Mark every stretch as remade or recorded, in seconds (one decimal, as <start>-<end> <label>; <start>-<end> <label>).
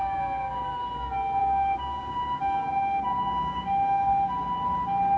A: 0.0-0.7 remade; 0.7-1.4 recorded; 1.4-4.3 remade; 4.3-5.2 recorded